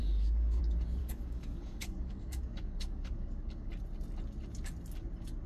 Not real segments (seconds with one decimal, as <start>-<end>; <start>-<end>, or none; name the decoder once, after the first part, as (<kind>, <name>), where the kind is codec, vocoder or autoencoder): 0.0-0.6 (codec, DAC); 1.0-3.7